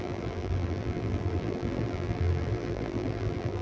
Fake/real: fake